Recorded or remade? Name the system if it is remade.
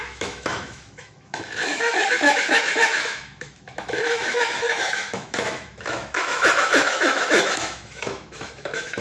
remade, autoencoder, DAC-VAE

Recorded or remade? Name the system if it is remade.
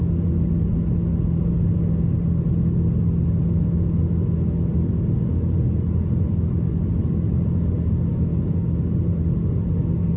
recorded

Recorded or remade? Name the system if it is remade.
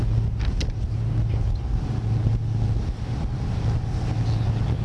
recorded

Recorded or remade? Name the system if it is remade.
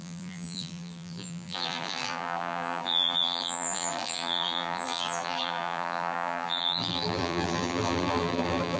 remade, vocoder, BigVGAN v2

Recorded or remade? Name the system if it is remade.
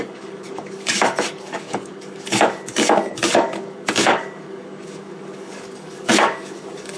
remade, codec, DAC